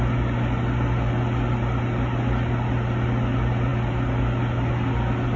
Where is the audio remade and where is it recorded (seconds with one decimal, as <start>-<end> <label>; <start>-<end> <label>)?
0.0-5.4 recorded